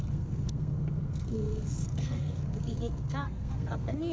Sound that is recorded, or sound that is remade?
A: remade